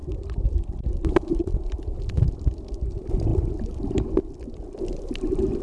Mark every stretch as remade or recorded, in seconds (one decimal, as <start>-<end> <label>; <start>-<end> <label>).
0.0-3.3 recorded; 3.3-4.6 remade; 4.6-5.6 recorded